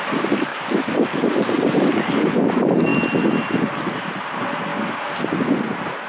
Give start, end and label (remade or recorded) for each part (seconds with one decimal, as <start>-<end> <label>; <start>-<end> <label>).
0.0-0.5 remade; 0.5-2.0 recorded; 2.0-4.7 remade; 4.7-5.5 recorded; 5.5-6.1 remade